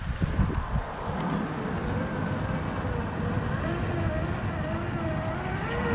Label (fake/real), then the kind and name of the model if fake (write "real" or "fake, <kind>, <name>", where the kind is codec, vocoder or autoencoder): real